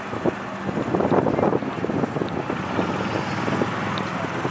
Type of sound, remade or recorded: recorded